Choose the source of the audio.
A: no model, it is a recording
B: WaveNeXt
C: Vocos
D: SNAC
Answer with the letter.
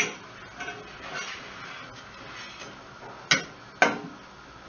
A